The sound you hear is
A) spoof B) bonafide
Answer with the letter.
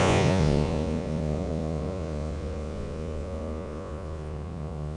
A